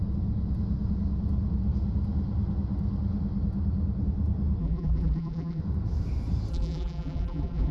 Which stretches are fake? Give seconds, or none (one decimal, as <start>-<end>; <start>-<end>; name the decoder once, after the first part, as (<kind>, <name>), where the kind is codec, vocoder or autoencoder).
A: 4.6-5.6 (vocoder, BigVGAN v2); 6.5-7.7